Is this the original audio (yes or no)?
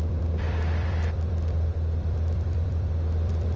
no